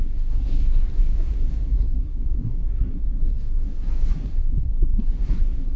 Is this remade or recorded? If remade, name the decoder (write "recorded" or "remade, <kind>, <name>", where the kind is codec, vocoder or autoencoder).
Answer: remade, codec, SNAC